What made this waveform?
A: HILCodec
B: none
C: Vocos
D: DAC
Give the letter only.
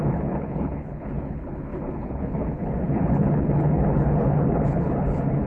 A